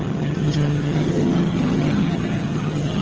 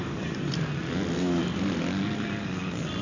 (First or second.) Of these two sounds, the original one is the second